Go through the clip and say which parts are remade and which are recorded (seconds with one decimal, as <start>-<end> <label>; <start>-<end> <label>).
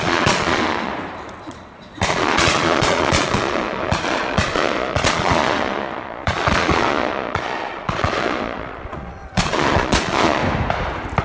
0.0-0.9 remade; 0.9-1.4 recorded; 1.4-10.4 remade; 10.4-11.2 recorded